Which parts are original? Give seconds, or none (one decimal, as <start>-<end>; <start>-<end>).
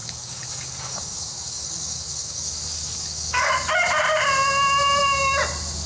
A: 3.5-5.9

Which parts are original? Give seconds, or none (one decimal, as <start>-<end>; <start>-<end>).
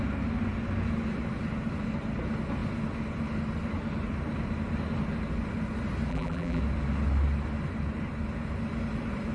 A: 0.0-6.1; 6.6-9.3